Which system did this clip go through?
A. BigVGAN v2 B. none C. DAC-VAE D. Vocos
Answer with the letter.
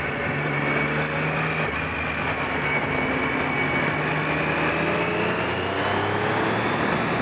B